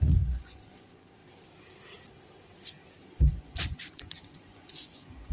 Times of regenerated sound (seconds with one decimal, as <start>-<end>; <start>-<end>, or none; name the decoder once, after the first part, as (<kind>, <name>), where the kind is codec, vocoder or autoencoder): 0.0-1.2 (vocoder, Vocos); 3.3-5.3